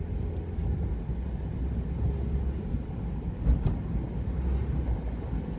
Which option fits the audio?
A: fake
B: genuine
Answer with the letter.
B